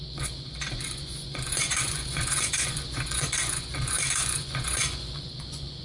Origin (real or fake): fake